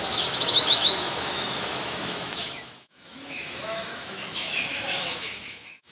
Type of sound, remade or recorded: remade